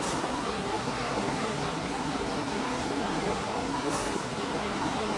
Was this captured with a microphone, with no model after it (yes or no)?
no